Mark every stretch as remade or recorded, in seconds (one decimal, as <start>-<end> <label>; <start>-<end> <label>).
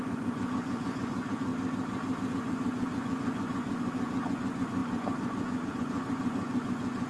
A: 0.0-1.5 remade; 1.5-2.3 recorded; 2.3-7.1 remade